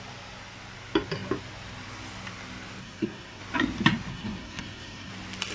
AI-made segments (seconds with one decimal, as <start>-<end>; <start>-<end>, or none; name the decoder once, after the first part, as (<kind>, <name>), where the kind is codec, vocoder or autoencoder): 2.8-3.4 (codec, SNAC); 4.1-5.1